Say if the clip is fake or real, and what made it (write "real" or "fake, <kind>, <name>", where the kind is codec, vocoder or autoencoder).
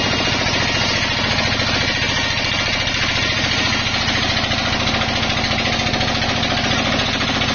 real